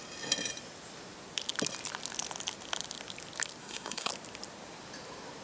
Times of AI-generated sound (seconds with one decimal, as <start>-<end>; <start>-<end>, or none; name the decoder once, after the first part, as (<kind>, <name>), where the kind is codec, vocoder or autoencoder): 3.6-4.1 (codec, SNAC)